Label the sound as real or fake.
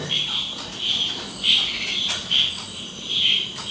fake